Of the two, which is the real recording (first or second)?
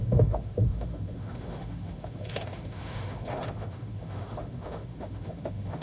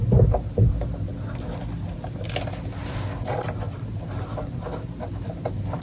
second